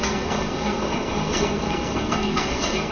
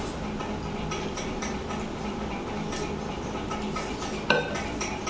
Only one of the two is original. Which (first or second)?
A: second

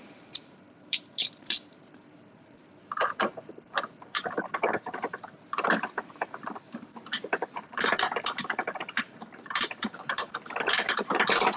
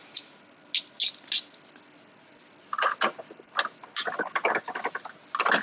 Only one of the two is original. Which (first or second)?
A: second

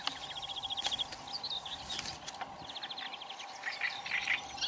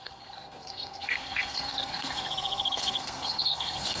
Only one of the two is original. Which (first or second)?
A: first